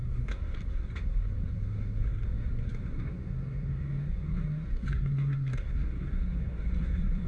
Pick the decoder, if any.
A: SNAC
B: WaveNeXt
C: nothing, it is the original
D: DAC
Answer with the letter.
A